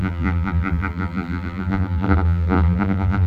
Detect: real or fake fake